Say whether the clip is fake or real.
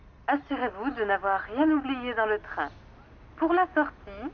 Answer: real